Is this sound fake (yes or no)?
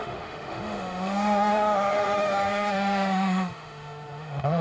yes